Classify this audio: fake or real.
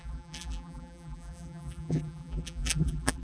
fake